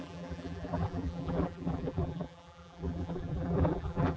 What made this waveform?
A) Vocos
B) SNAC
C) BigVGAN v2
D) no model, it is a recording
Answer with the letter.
C